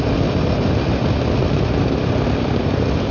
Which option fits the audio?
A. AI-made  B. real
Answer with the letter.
B